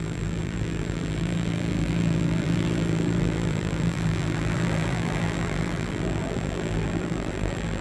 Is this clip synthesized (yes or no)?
yes